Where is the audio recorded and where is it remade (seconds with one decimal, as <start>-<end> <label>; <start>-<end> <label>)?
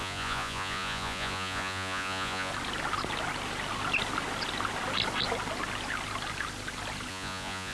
0.0-2.5 remade; 2.5-7.1 recorded; 7.1-7.7 remade